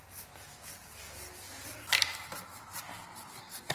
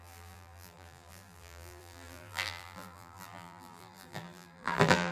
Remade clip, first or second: second